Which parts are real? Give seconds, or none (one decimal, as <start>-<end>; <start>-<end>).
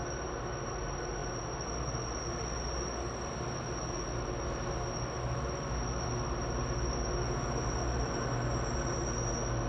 0.0-9.7